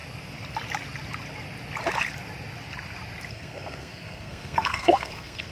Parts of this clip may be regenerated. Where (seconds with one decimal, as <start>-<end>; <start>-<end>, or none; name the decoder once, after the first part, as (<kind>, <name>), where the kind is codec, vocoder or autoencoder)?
3.3-5.5 (codec, SNAC)